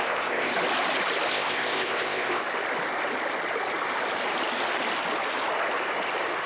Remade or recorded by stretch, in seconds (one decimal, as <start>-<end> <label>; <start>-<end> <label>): 0.0-0.5 remade; 0.5-1.3 recorded; 1.3-2.4 remade; 2.4-6.5 recorded